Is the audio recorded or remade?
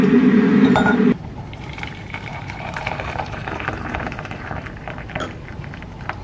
remade